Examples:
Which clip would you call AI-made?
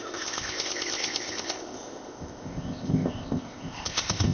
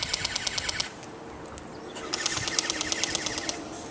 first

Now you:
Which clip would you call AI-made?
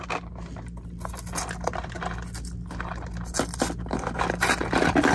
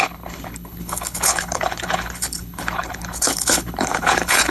second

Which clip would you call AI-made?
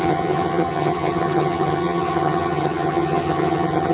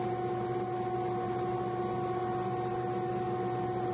first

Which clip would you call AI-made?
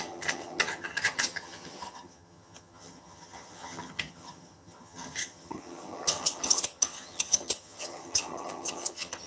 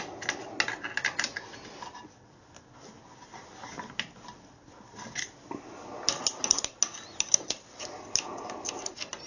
first